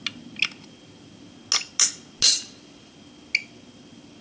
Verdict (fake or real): real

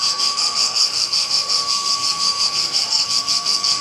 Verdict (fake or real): fake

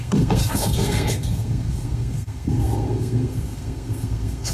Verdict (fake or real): fake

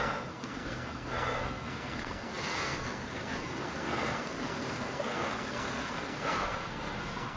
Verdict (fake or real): fake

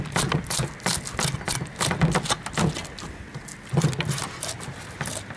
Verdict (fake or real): real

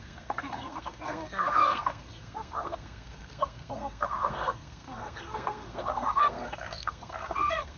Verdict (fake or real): fake